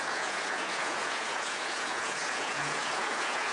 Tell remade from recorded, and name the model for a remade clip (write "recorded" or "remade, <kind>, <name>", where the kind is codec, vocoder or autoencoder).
remade, vocoder, Vocos